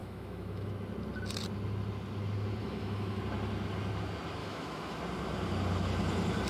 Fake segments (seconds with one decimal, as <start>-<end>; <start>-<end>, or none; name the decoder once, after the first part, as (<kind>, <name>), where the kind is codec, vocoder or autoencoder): 0.0-0.7 (autoencoder, DAC-VAE); 2.6-3.2; 4.4-5.0

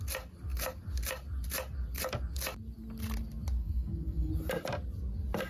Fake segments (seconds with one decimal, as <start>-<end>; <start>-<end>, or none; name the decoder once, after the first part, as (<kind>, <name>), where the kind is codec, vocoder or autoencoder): 3.6-4.3 (codec, SNAC)

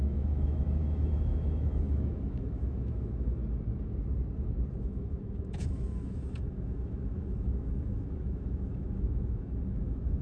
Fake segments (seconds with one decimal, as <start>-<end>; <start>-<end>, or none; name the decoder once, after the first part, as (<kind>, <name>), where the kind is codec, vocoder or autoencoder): 0.0-3.4 (autoencoder, DAC-VAE); 4.8-10.2

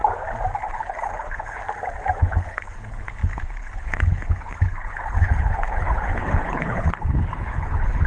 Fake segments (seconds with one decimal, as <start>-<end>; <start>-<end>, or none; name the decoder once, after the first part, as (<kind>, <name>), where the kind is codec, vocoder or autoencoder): 0.6-1.6 (codec, HILCodec); 2.2-8.1

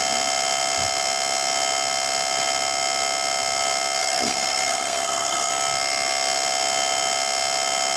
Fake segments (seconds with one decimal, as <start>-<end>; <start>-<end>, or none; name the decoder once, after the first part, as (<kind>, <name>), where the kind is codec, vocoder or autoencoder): 4.0-5.5 (codec, SNAC)

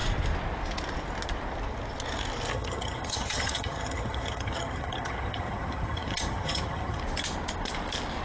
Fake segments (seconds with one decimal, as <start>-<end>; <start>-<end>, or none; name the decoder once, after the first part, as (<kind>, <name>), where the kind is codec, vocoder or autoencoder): 2.5-7.0 (vocoder, HiFi-GAN)

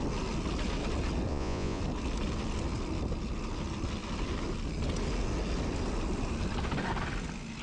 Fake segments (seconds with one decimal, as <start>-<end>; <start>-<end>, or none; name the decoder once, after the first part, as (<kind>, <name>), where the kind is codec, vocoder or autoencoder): 1.3-1.8 (vocoder, Vocos)